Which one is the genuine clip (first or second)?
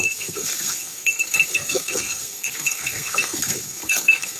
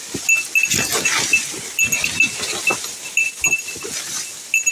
second